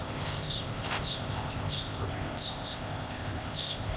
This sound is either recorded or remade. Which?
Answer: remade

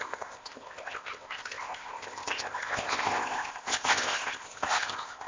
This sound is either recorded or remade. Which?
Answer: remade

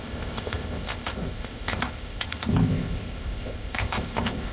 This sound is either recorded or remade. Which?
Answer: remade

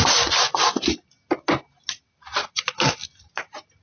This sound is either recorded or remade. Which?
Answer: recorded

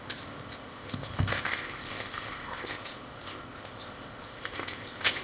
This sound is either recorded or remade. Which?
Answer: remade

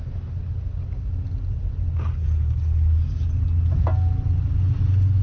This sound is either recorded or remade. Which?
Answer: recorded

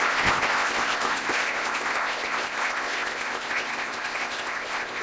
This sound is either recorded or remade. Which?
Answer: remade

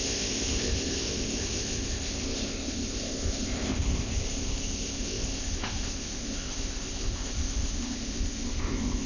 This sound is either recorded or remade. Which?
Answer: remade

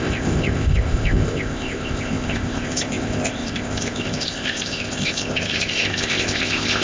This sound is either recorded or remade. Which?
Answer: remade